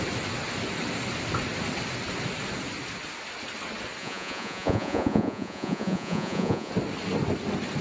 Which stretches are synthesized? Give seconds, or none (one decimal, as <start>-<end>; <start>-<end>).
4.0-6.7

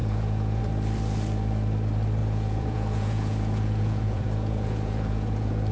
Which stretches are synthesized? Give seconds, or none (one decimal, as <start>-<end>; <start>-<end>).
0.0-0.6; 2.2-5.7

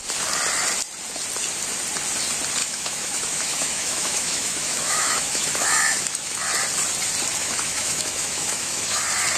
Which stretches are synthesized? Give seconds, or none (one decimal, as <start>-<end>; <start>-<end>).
2.6-6.4; 7.4-9.0

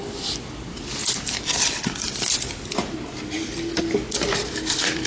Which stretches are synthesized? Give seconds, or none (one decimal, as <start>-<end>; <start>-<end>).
0.0-1.0; 3.8-5.1